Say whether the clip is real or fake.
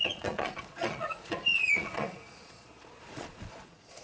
fake